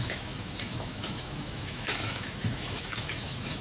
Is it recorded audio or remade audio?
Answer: remade